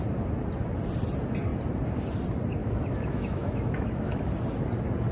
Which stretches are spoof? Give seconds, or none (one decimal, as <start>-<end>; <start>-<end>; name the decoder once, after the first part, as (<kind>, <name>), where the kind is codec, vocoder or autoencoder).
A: 2.6-4.3 (autoencoder, DAC-VAE)